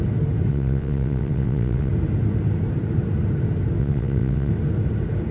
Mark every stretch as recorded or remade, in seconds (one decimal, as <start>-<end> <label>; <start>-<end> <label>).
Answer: 0.0-0.5 recorded; 0.5-1.9 remade; 1.9-3.8 recorded; 3.8-4.5 remade; 4.5-5.3 recorded